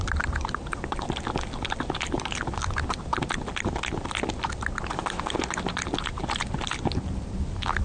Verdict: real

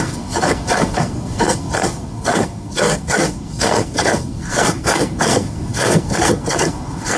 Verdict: fake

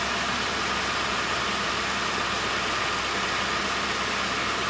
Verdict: real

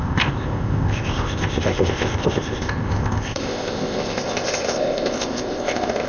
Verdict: fake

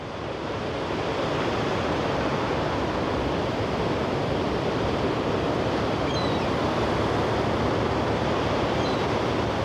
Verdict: fake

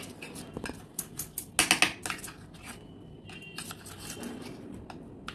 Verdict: real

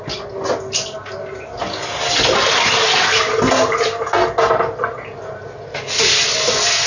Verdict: real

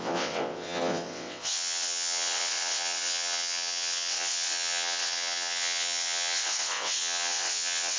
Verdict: fake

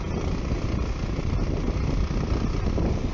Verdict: real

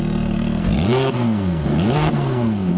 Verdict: fake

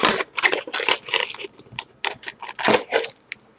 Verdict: real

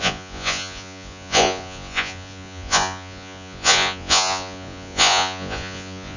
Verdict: fake